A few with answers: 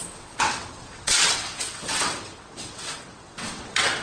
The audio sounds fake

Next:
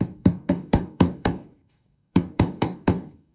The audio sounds fake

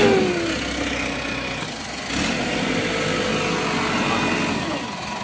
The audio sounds real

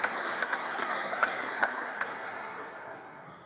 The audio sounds fake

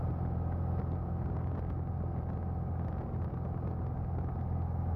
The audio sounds real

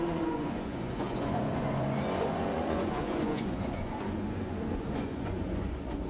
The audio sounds fake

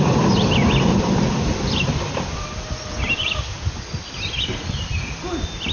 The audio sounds real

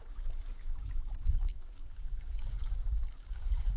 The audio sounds fake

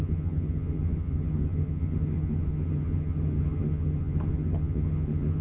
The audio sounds fake